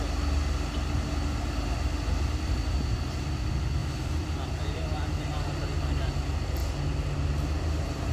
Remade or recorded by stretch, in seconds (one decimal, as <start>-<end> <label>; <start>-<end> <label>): 0.0-8.1 recorded